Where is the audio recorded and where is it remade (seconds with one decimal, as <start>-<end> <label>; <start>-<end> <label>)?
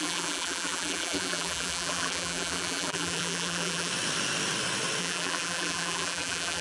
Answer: 0.0-3.9 remade; 3.9-5.0 recorded; 5.0-6.6 remade